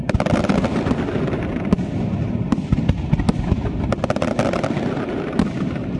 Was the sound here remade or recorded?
recorded